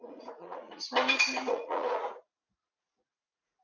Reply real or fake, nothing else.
fake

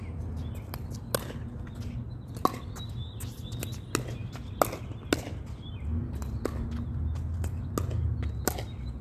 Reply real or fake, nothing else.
real